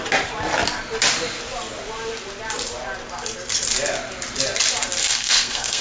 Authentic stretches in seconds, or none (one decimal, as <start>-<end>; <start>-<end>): 0.0-5.0